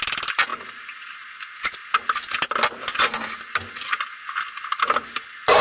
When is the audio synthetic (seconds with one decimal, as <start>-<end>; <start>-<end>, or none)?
none